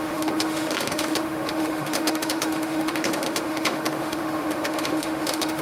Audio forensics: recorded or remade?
remade